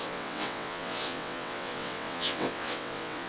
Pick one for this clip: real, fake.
fake